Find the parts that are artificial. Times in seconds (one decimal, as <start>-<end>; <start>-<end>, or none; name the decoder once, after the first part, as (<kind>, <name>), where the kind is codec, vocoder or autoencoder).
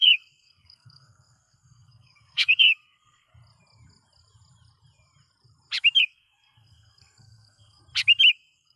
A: 0.0-3.3 (codec, SNAC); 6.0-7.8; 8.3-8.8